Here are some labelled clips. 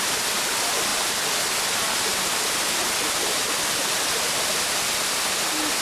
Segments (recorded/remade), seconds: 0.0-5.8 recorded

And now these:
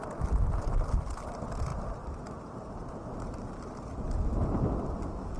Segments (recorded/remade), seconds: 0.0-5.4 recorded

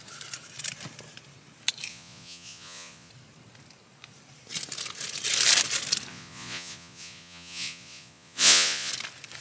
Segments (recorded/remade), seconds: 0.0-1.9 recorded; 1.9-3.1 remade; 3.1-6.1 recorded; 6.1-8.9 remade; 8.9-9.4 recorded

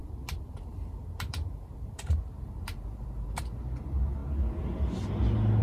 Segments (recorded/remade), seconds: 0.0-3.4 remade; 3.4-5.6 recorded

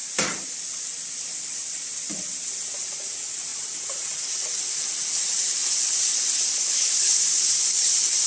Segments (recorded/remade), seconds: 0.0-6.6 recorded; 6.6-7.2 remade; 7.2-8.3 recorded

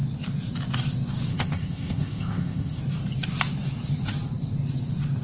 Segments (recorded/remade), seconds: 0.0-1.3 recorded; 1.3-2.8 remade; 2.8-5.2 recorded

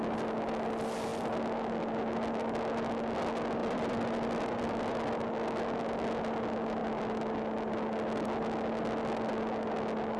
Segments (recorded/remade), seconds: 0.0-3.6 recorded; 3.6-5.1 remade; 5.1-10.2 recorded